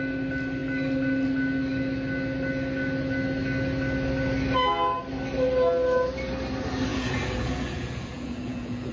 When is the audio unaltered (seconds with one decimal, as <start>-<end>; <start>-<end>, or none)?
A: 0.0-6.9